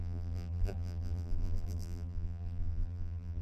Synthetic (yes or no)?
yes